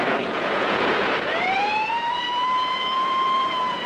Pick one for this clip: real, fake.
fake